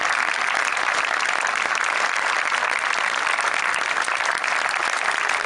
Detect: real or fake fake